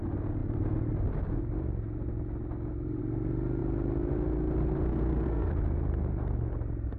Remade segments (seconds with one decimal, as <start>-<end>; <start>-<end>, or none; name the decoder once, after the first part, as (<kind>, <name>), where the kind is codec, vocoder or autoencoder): 4.9-5.5 (codec, SNAC)